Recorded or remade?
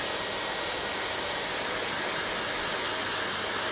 recorded